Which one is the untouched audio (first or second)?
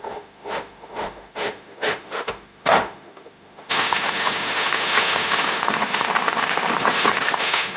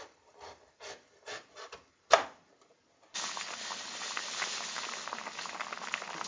second